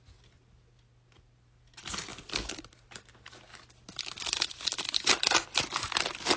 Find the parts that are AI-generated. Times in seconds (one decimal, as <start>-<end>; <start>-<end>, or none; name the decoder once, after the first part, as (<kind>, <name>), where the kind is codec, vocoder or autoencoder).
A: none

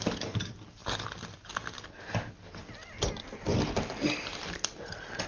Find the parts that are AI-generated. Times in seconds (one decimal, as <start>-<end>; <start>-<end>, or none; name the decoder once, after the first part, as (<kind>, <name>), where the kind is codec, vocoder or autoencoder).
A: none

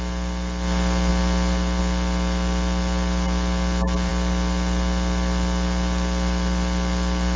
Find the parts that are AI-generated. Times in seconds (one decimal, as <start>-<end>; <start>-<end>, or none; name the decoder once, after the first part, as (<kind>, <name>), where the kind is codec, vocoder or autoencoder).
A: none

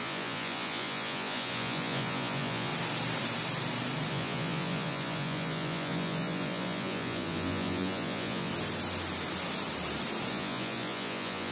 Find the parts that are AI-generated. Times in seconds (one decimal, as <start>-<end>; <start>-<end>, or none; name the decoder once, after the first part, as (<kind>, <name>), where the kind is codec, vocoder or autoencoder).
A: 0.0-2.7 (vocoder, Vocos); 4.1-8.5; 10.3-11.5